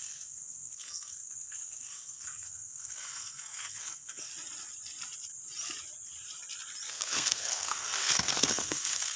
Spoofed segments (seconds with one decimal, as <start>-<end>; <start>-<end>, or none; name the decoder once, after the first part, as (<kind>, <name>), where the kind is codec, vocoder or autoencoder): 0.0-4.3 (codec, SNAC); 6.9-9.2